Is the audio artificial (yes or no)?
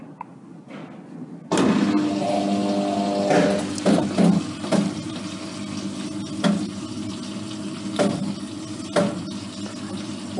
no